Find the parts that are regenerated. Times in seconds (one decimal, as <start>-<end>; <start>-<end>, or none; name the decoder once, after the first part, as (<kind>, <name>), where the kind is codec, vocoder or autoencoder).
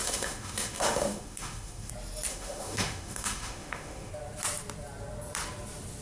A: 0.0-1.9 (autoencoder, DAC-VAE); 2.3-4.1